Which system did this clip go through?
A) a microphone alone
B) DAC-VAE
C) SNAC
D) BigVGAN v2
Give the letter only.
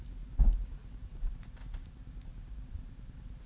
D